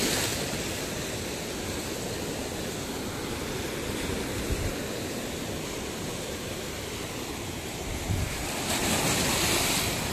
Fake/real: real